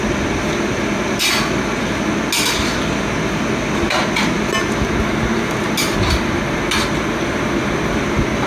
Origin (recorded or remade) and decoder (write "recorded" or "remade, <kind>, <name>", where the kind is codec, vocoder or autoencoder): recorded